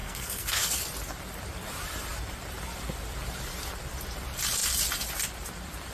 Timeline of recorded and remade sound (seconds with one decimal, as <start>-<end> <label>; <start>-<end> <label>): 0.0-0.8 remade; 0.8-5.9 recorded